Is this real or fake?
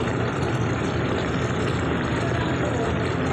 real